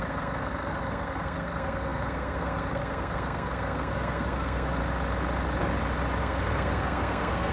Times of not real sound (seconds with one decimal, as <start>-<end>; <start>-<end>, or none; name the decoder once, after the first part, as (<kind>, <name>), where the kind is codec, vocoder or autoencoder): 0.0-4.8 (codec, SNAC); 6.2-7.5